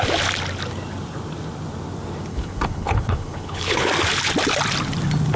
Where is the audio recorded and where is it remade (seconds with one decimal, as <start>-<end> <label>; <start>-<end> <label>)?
0.0-2.3 recorded; 2.3-3.9 remade; 3.9-5.4 recorded